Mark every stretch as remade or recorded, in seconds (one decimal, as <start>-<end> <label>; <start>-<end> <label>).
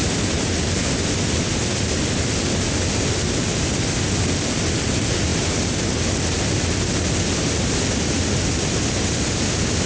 0.0-9.9 recorded